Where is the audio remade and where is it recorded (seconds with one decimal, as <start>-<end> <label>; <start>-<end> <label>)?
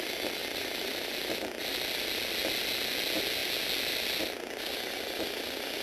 0.0-5.8 recorded